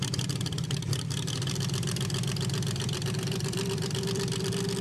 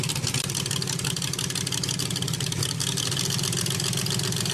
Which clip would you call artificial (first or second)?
first